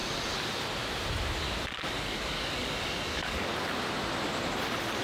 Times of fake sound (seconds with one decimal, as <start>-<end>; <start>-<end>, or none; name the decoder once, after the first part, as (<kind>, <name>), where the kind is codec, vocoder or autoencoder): 1.9-3.5 (codec, DAC)